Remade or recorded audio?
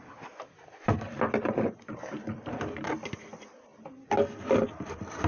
recorded